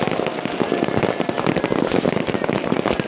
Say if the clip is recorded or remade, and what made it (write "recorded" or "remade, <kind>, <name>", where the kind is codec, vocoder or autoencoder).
recorded